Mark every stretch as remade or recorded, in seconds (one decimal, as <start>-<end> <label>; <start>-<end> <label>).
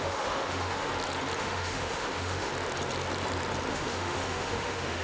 0.0-0.9 remade; 0.9-1.4 recorded; 1.4-2.5 remade; 2.5-3.7 recorded; 3.7-5.0 remade